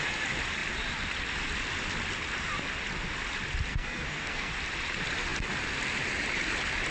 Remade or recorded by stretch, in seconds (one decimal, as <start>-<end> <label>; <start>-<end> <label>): 0.0-3.7 recorded; 3.7-4.5 remade; 4.5-6.9 recorded